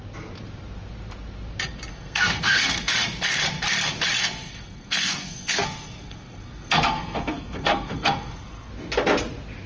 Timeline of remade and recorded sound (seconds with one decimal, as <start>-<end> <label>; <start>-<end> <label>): 0.0-1.9 recorded; 1.9-2.9 remade; 2.9-4.2 recorded; 4.2-8.7 remade; 8.7-9.7 recorded